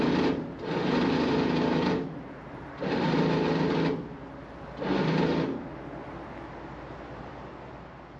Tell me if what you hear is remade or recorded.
recorded